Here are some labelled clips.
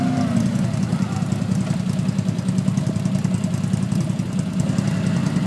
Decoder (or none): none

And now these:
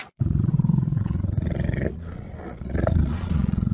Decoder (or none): vocoder, Vocos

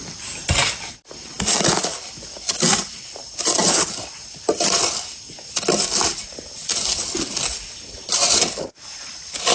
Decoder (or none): none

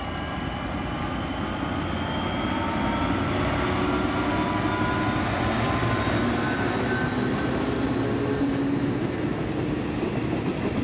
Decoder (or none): none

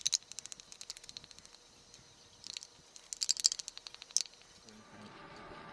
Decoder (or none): none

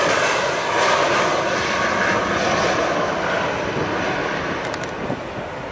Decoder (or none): none